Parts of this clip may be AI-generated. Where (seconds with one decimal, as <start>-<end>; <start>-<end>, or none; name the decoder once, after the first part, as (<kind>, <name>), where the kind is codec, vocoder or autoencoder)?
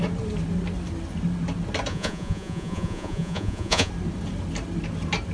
1.9-3.9 (vocoder, Vocos)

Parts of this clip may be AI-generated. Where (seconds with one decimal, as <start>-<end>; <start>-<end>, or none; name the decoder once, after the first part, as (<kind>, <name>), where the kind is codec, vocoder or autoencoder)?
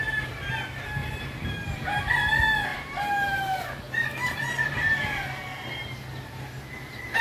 1.0-2.0 (vocoder, BigVGAN v2); 2.7-6.4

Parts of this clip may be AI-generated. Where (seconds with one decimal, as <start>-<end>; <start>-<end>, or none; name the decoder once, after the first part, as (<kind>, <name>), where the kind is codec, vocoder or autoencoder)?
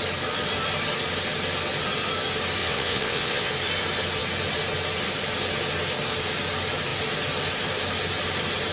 2.6-3.5 (vocoder, WaveNeXt)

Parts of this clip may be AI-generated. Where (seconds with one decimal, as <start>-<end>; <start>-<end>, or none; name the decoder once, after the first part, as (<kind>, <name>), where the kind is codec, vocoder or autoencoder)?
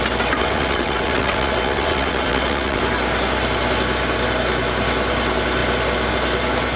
0.4-2.8 (vocoder, WaveNeXt)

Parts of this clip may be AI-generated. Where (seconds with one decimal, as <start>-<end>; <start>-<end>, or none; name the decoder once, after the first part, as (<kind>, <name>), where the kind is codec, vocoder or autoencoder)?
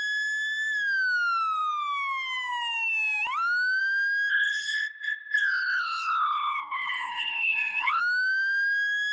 4.3-8.0 (codec, HILCodec)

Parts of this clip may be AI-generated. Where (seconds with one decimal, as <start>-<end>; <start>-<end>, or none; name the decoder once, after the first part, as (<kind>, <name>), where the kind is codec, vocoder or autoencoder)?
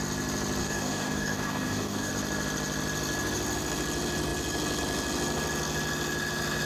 0.6-2.1 (codec, DAC)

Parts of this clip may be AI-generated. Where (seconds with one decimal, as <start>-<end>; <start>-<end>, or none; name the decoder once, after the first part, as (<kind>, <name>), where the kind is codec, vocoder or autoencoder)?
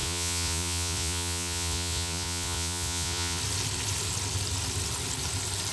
0.0-3.4 (vocoder, Vocos)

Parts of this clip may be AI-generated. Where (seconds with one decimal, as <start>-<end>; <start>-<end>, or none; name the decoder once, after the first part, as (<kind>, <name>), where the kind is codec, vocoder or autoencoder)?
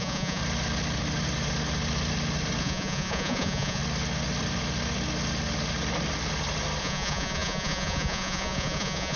0.0-0.4 (vocoder, Vocos); 2.6-3.8; 6.8-9.2